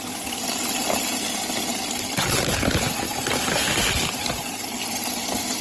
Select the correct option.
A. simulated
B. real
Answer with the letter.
B